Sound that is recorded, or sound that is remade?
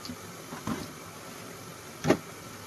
recorded